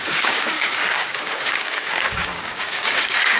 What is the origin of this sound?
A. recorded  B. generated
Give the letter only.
B